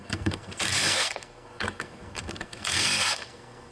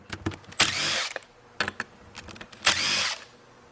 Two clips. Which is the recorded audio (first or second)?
second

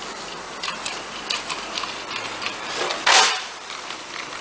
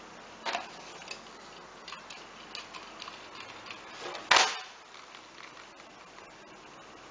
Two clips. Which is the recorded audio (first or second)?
second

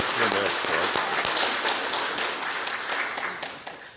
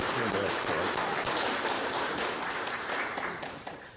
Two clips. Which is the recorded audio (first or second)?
first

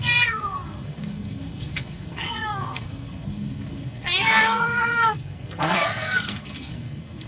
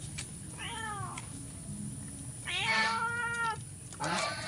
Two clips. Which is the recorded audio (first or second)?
second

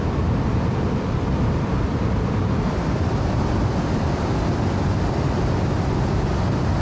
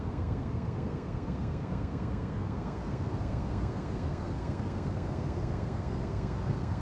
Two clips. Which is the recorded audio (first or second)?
first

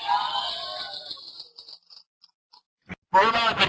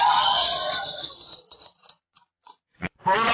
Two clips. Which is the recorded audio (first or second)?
first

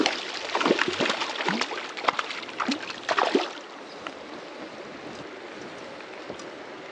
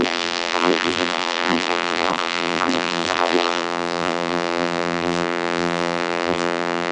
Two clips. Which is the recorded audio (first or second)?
first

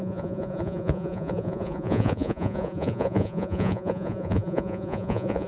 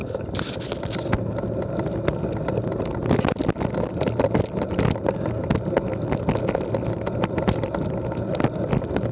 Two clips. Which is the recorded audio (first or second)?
second